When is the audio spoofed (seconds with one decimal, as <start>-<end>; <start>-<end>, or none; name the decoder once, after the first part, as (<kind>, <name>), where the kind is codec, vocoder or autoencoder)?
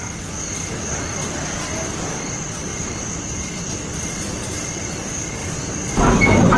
none